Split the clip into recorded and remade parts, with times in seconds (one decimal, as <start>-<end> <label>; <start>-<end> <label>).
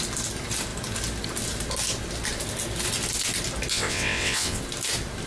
0.0-3.7 recorded; 3.7-4.6 remade; 4.6-5.3 recorded